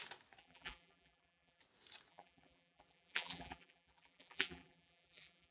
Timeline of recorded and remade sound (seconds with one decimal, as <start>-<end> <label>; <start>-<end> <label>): 0.0-0.4 recorded; 0.4-1.6 remade; 1.6-2.1 recorded; 2.1-5.5 remade